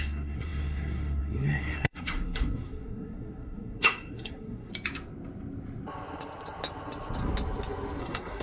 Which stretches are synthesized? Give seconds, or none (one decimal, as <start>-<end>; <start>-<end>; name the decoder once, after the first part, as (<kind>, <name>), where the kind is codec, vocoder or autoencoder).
0.0-4.7 (codec, SNAC); 8.0-8.4